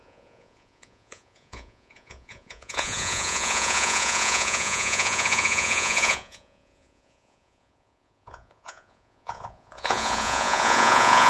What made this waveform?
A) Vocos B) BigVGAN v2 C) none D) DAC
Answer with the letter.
A